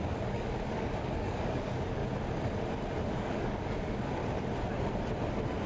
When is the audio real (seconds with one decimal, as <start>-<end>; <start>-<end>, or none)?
2.0-3.0; 4.2-5.7

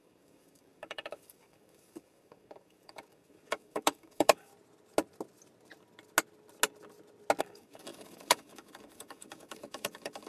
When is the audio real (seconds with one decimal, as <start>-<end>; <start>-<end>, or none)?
4.5-7.4

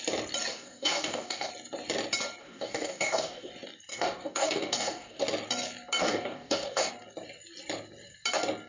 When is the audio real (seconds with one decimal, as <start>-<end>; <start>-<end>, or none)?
0.0-0.5; 1.5-2.4; 3.5-3.9; 5.2-6.0; 6.9-8.7

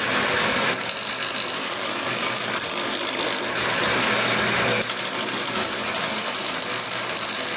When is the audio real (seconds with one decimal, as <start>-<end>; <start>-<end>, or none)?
0.0-1.6; 3.1-5.3; 6.3-7.6

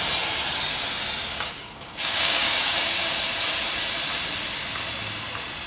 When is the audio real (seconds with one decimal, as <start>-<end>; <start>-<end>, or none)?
0.0-1.3; 3.2-5.7

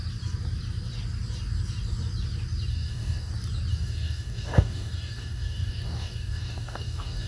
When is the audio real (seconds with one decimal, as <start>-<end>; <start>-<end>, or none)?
0.0-2.7; 3.3-3.7

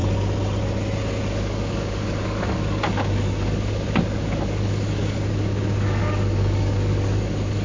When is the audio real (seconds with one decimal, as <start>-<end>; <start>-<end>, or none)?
0.0-1.3

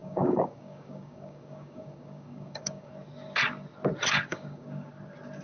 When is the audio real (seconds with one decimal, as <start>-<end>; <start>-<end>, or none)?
2.9-4.3; 4.9-5.4